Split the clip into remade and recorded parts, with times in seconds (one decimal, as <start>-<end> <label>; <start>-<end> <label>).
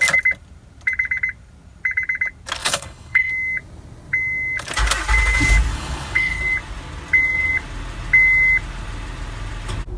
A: 0.0-2.6 recorded; 2.6-3.3 remade; 3.3-5.7 recorded; 5.7-6.4 remade; 6.4-10.0 recorded